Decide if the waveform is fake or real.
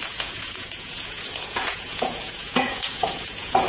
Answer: fake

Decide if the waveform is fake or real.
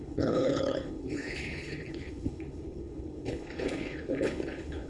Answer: fake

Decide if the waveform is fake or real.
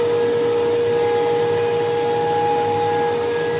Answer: real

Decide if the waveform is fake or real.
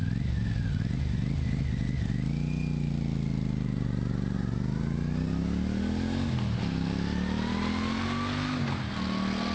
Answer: real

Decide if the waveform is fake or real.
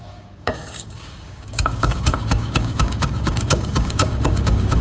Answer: fake